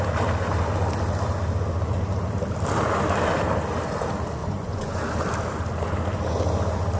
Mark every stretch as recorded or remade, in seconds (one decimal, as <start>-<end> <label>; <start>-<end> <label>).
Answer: 0.0-4.4 recorded; 4.4-5.0 remade; 5.0-7.0 recorded